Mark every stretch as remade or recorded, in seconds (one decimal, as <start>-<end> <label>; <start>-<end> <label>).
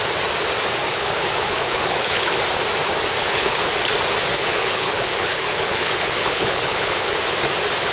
0.0-0.9 recorded; 0.9-2.4 remade; 2.4-3.2 recorded; 3.2-3.7 remade; 3.7-4.3 recorded; 4.3-7.1 remade; 7.1-7.9 recorded